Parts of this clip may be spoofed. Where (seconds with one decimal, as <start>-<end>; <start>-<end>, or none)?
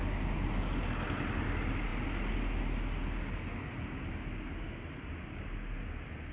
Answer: none